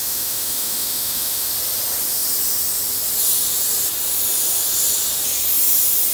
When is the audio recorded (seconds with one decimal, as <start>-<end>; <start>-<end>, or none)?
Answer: 1.5-6.1